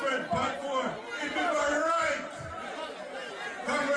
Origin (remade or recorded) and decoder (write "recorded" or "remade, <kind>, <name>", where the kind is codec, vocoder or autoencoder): recorded